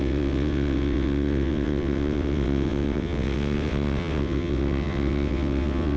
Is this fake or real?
fake